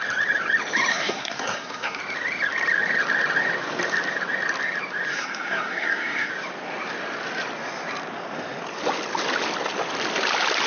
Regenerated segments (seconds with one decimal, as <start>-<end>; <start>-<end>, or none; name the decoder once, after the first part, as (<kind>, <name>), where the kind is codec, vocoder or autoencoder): 0.9-2.0 (codec, SNAC); 5.1-6.3